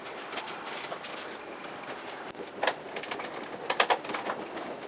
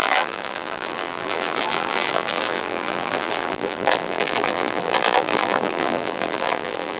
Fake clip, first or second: second